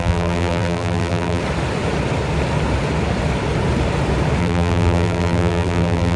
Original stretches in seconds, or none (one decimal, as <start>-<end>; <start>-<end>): 1.4-4.4